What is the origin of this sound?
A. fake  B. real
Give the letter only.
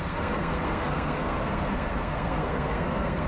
A